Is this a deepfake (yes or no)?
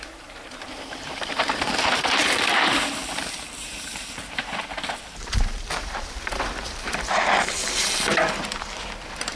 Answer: yes